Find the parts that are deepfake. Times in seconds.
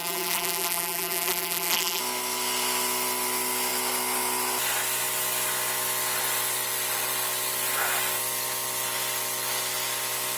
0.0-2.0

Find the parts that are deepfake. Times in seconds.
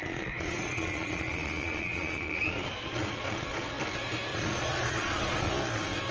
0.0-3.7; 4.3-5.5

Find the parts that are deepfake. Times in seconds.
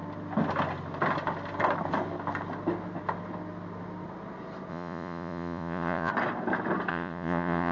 4.7-6.1; 6.9-7.7